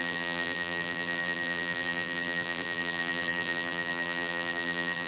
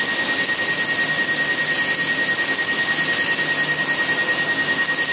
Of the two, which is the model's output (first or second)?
first